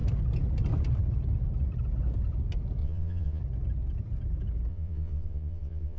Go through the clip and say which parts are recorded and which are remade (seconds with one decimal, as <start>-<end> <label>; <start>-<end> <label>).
0.0-2.8 recorded; 2.8-3.4 remade; 3.4-4.7 recorded; 4.7-6.0 remade